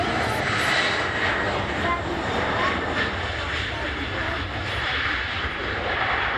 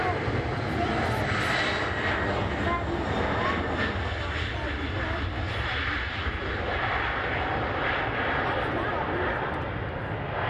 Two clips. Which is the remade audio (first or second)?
first